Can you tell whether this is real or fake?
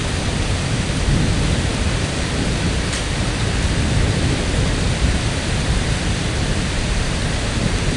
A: fake